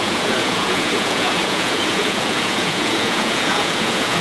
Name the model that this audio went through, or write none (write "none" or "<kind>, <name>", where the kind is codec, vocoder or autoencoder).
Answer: vocoder, Vocos